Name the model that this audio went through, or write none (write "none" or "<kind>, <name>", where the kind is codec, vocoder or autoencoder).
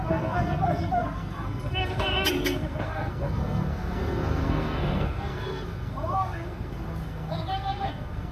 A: codec, SNAC